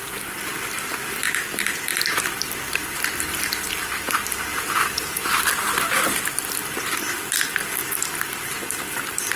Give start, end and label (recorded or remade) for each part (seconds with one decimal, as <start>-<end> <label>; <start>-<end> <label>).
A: 0.0-4.5 recorded; 4.5-5.3 remade; 5.3-9.4 recorded